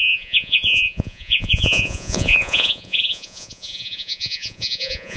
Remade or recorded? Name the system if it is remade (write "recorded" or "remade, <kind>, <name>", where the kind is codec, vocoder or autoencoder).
remade, vocoder, Vocos